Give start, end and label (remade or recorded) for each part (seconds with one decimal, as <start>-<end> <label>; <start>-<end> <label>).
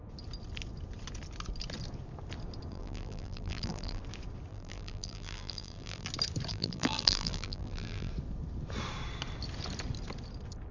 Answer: 0.0-2.7 recorded; 2.7-4.0 remade; 4.0-4.5 recorded; 4.5-6.1 remade; 6.1-6.5 recorded; 6.5-8.1 remade; 8.1-10.7 recorded